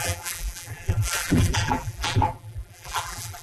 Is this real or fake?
fake